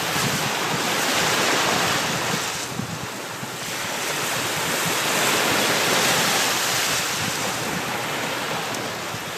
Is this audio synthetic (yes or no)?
no